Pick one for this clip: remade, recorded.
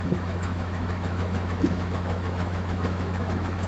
remade